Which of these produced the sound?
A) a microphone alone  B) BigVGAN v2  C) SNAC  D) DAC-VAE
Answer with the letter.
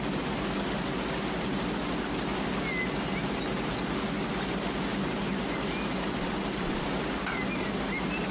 A